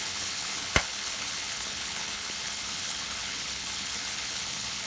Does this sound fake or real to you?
fake